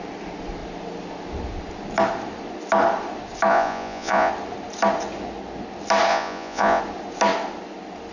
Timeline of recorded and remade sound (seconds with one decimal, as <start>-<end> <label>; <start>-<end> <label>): 0.0-3.5 recorded; 3.5-4.3 remade; 4.3-6.1 recorded; 6.1-6.8 remade; 6.8-8.1 recorded